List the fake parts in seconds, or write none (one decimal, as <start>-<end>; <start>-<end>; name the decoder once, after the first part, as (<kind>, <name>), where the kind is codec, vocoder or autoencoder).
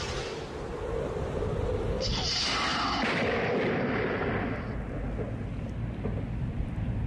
none